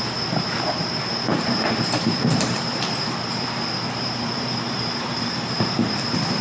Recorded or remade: remade